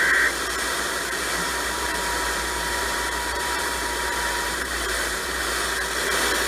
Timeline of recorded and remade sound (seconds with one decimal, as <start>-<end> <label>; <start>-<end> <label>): 0.0-1.5 recorded; 1.5-5.4 remade; 5.4-6.5 recorded